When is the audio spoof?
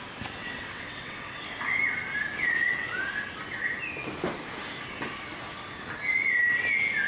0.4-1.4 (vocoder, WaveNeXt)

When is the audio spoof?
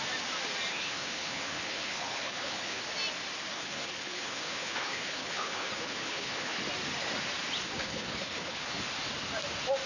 0.7-2.8 (codec, HILCodec); 3.5-6.6; 7.8-8.8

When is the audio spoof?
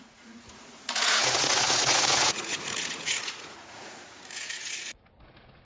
0.0-5.6 (vocoder, Vocos)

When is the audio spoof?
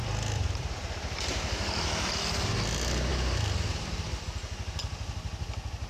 0.0-2.1 (vocoder, BigVGAN v2)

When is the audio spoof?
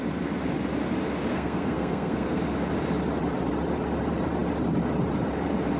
1.3-2.4 (codec, SNAC)